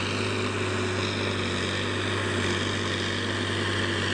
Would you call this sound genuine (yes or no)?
yes